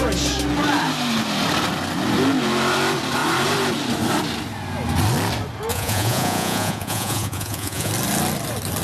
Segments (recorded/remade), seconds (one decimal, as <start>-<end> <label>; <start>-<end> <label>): 0.0-5.7 recorded; 5.7-7.9 remade; 7.9-8.8 recorded